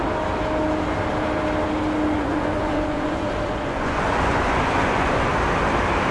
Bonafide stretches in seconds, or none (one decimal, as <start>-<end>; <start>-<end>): 0.0-2.2; 5.3-6.1